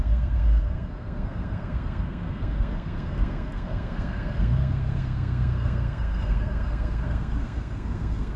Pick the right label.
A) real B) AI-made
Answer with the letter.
B